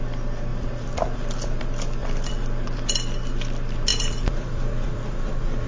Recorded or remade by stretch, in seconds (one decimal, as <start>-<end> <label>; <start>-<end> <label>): 0.0-0.5 recorded; 0.5-1.6 remade; 1.6-2.0 recorded; 2.0-2.9 remade; 2.9-3.9 recorded; 3.9-5.3 remade; 5.3-5.7 recorded